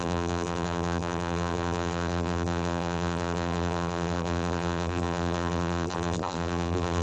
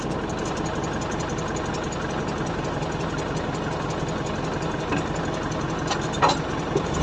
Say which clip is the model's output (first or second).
first